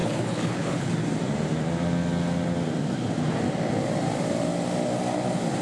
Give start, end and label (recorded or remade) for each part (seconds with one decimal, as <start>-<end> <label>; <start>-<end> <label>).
0.0-0.9 remade; 0.9-5.6 recorded